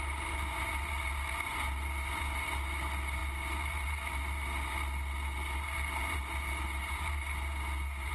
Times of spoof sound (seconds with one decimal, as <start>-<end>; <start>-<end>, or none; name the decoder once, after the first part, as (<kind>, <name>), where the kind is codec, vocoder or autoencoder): none